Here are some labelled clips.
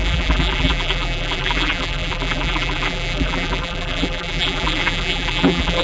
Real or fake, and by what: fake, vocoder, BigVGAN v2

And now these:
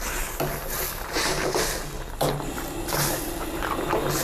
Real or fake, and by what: real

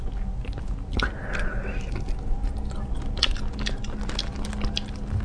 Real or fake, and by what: real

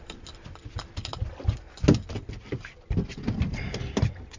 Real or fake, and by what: real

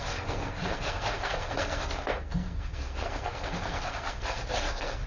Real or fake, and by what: fake, codec, SNAC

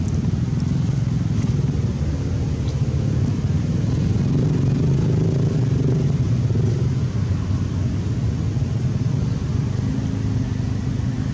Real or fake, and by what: real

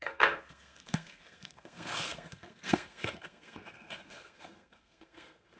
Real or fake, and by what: fake, codec, SNAC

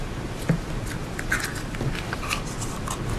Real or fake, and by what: real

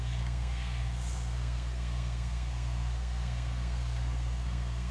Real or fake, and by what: fake, codec, SNAC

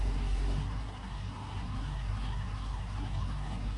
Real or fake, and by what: fake, codec, SNAC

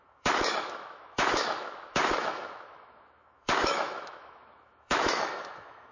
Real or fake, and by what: fake, autoencoder, DAC-VAE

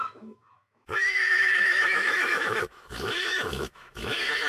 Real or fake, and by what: fake, autoencoder, DAC-VAE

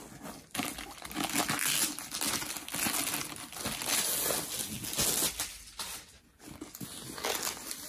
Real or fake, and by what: real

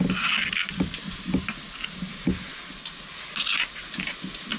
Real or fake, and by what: real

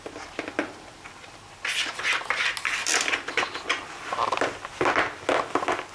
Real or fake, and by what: real